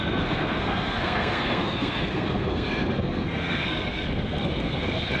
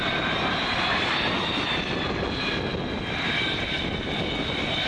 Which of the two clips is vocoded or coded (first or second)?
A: first